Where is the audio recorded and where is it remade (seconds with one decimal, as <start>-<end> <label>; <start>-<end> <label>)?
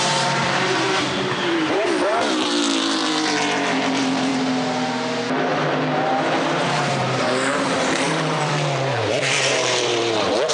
0.0-4.3 remade; 4.3-6.7 recorded; 6.7-10.5 remade